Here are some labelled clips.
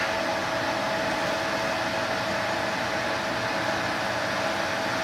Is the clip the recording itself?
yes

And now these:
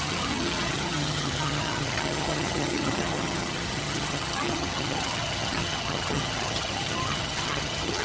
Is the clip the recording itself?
no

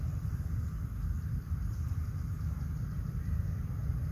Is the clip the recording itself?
yes